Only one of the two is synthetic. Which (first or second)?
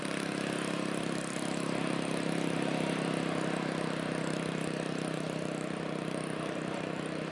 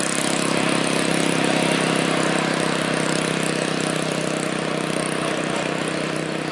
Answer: first